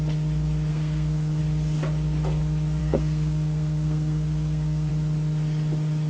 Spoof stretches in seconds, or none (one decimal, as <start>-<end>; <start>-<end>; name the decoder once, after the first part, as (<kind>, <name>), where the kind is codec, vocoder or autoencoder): 0.7-1.4 (codec, SNAC); 2.8-4.9